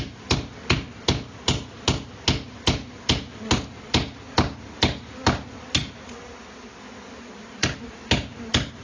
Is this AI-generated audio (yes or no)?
no